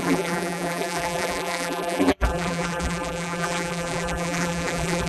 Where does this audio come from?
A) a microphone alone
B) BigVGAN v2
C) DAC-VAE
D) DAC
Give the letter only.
B